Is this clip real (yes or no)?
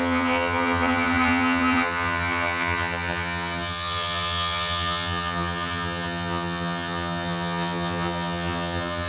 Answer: no